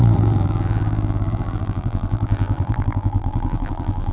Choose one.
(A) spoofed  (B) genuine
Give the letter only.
A